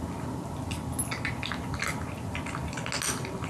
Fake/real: real